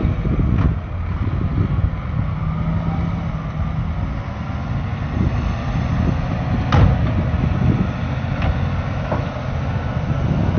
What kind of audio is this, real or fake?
real